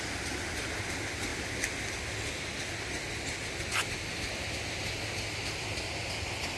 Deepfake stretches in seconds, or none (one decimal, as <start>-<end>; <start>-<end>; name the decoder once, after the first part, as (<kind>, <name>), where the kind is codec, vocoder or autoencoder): none